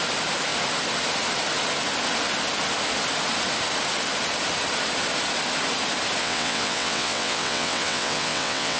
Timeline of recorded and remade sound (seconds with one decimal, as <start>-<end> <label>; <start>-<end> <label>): 0.0-6.2 recorded; 6.2-8.8 remade